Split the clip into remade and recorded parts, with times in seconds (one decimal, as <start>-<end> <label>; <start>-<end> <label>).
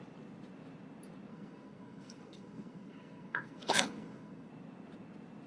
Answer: 0.0-1.3 recorded; 1.3-4.5 remade; 4.5-5.5 recorded